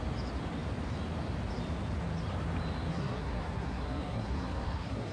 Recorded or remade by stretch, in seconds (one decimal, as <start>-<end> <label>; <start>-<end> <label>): 0.0-2.9 recorded; 2.9-5.1 remade